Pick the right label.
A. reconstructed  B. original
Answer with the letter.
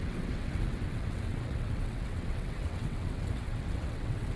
A